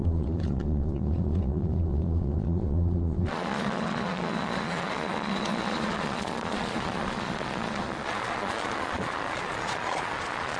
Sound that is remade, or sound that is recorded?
remade